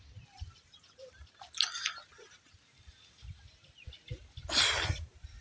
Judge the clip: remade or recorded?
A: recorded